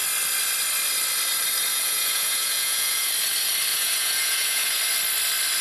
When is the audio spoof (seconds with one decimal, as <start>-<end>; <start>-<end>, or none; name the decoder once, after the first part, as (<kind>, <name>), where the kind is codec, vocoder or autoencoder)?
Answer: 1.7-3.1 (vocoder, Vocos); 3.7-4.8